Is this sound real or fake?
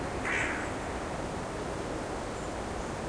real